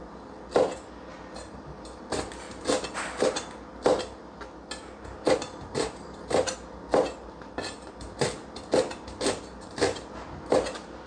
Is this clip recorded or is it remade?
recorded